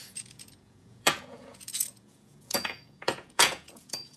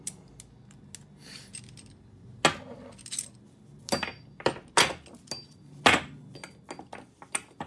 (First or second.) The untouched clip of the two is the second